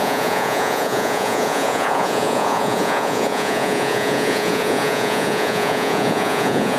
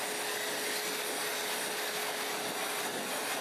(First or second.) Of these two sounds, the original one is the second